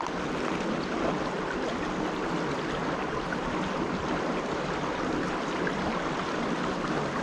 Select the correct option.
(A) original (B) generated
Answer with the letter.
A